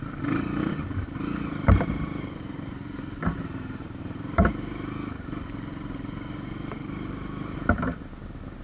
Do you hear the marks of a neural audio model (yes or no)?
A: no